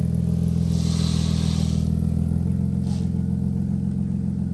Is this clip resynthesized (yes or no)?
no